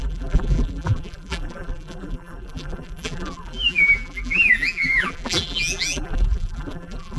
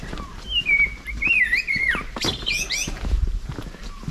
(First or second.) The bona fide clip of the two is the second